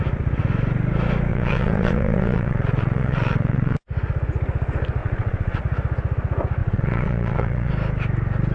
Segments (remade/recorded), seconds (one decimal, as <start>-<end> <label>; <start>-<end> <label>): 0.0-1.3 recorded; 1.3-3.8 remade; 3.8-5.0 recorded; 5.0-5.6 remade; 5.6-6.6 recorded; 6.6-7.7 remade; 7.7-8.5 recorded